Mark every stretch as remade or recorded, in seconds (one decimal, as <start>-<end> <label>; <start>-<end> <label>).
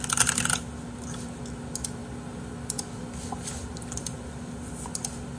0.0-5.4 recorded